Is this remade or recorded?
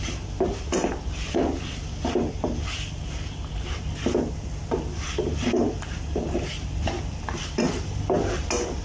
recorded